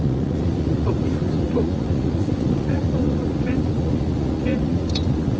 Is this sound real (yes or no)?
no